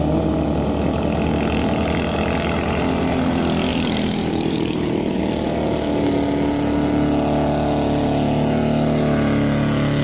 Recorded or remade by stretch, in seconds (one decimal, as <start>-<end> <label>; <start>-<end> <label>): 0.0-3.7 recorded; 3.7-5.2 remade; 5.2-10.0 recorded